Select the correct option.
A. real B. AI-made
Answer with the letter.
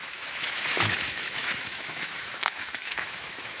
B